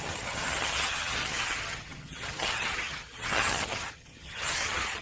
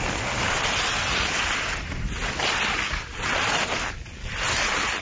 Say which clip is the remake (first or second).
first